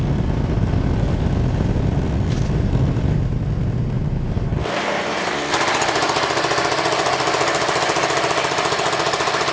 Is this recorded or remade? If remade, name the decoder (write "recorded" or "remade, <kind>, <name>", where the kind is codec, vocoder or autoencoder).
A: recorded